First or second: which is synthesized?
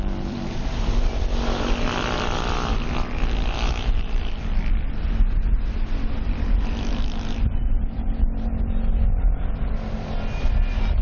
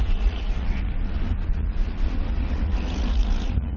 second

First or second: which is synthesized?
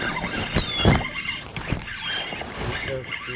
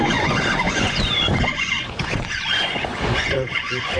second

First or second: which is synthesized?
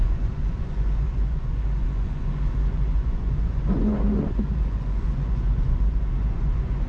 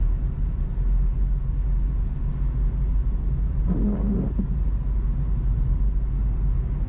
first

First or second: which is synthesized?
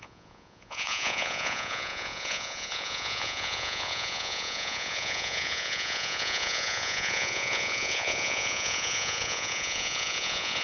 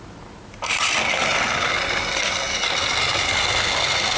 first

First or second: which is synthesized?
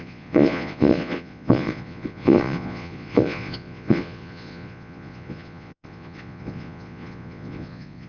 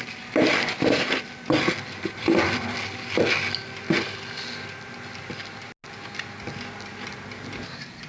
first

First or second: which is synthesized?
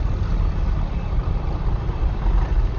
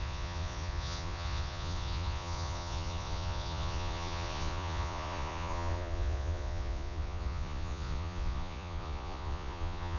second